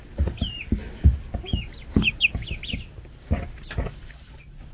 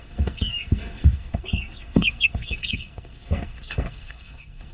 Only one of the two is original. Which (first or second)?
first